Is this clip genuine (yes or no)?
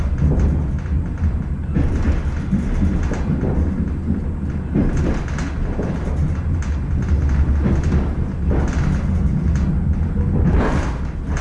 yes